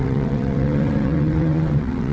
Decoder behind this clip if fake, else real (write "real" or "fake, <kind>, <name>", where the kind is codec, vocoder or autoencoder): fake, vocoder, WaveNeXt